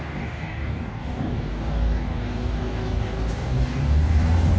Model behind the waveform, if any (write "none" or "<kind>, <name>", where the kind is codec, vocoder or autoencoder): codec, DAC